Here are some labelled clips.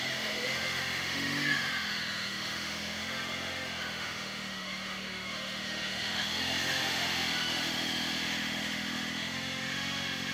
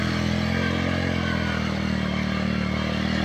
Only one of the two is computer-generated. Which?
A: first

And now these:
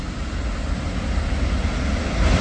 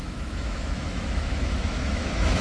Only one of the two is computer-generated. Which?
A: second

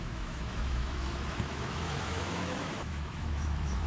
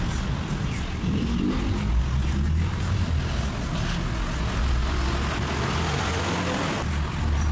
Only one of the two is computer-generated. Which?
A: first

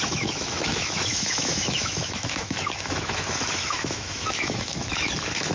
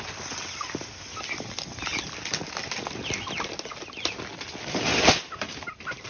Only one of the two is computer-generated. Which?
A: first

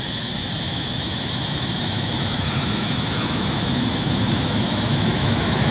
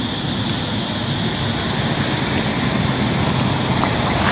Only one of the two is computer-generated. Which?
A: first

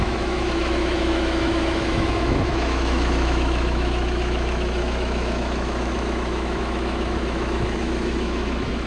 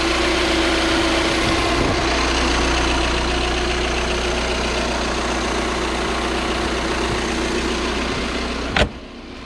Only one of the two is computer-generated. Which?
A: first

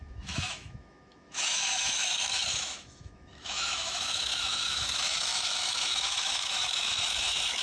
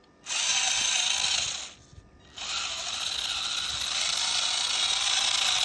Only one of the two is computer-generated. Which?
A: first